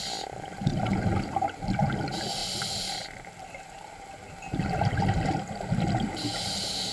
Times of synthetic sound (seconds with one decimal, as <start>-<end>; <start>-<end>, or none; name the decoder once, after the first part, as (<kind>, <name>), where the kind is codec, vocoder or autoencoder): none